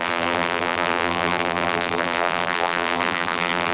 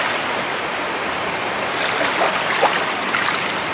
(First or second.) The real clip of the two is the second